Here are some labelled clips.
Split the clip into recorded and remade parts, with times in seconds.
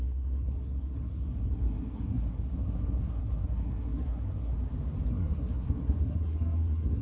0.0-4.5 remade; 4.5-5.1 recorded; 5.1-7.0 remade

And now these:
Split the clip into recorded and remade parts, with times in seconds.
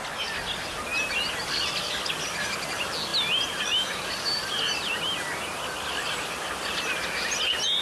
0.0-7.8 recorded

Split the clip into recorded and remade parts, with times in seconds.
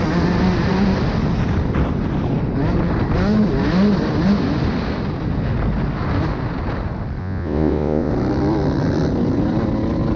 0.0-7.2 recorded; 7.2-8.1 remade; 8.1-10.2 recorded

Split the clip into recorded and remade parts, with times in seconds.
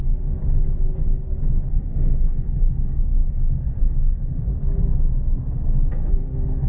0.0-0.4 remade; 0.4-1.7 recorded; 1.7-4.5 remade; 4.5-5.9 recorded; 5.9-6.7 remade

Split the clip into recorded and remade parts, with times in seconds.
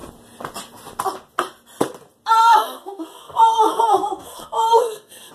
0.0-2.4 recorded; 2.4-5.3 remade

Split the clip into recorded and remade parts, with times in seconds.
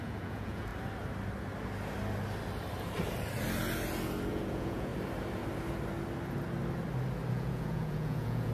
0.0-0.7 remade; 0.7-4.3 recorded; 4.3-4.9 remade; 4.9-7.3 recorded; 7.3-8.5 remade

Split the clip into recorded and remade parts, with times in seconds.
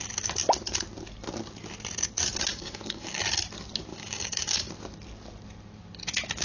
0.0-2.5 recorded; 2.5-3.2 remade; 3.2-3.9 recorded; 3.9-4.7 remade; 4.7-6.4 recorded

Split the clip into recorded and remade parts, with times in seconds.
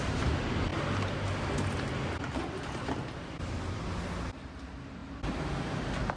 0.0-6.2 recorded